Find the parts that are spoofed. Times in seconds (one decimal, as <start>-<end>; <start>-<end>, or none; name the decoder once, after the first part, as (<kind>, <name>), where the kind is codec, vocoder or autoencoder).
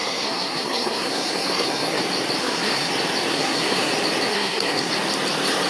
0.0-2.0 (codec, SNAC); 2.4-2.9; 3.3-3.9; 4.3-4.9